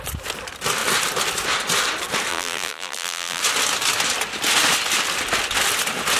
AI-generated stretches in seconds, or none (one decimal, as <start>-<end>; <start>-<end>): 2.3-3.4